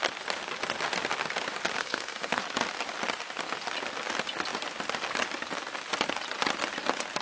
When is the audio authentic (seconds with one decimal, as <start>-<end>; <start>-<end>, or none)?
0.0-1.8; 2.4-7.2